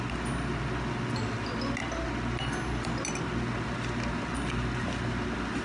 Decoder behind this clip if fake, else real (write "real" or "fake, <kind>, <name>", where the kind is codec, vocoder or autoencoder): real